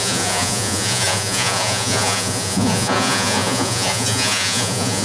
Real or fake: fake